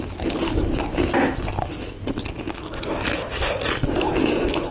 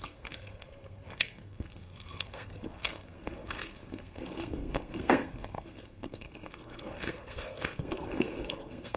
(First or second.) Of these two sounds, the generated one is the second